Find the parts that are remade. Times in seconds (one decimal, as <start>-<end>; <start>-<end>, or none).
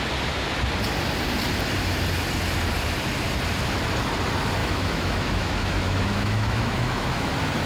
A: 4.6-7.3